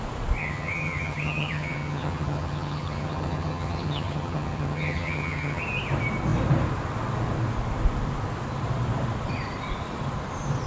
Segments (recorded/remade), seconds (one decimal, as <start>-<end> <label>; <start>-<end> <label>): 0.0-0.4 recorded; 0.4-5.6 remade; 5.6-10.7 recorded